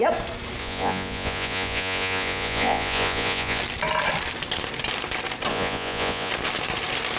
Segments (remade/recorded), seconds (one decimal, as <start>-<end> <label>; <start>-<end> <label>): 0.0-0.6 recorded; 0.6-3.6 remade; 3.6-5.5 recorded; 5.5-6.3 remade; 6.3-7.2 recorded